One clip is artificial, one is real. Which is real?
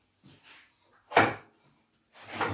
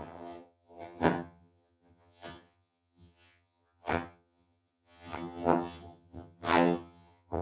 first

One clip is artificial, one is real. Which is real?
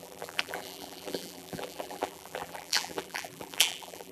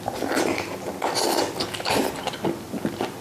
second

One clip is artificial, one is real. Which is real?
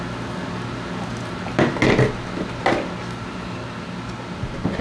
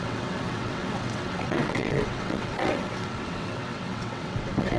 first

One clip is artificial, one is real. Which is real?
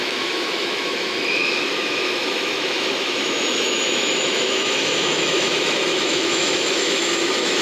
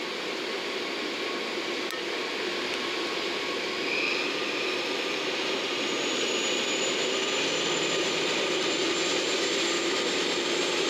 second